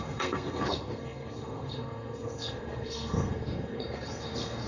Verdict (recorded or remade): remade